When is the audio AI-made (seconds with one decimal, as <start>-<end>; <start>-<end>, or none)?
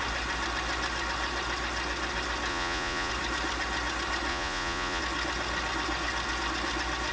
2.5-3.1; 4.3-5.0